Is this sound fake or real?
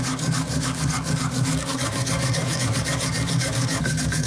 fake